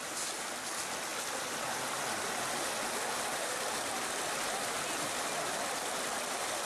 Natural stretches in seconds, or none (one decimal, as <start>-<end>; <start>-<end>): 0.0-6.7

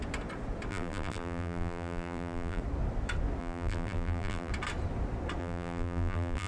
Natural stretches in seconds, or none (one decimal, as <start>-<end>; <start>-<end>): 0.0-0.7; 2.6-3.4; 4.5-5.4

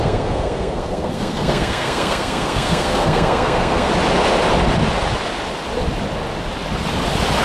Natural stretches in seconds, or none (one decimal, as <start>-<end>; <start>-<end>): 3.9-7.4

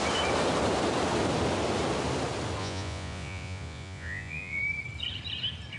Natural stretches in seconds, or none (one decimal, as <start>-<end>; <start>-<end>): 0.0-2.6; 4.6-5.8

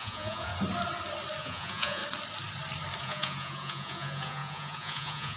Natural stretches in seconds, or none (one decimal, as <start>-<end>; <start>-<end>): 0.5-1.4; 2.0-3.0

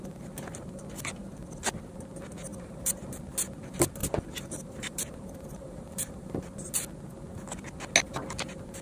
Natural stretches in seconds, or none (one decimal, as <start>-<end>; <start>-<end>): 0.0-2.5; 3.2-4.0; 6.4-8.8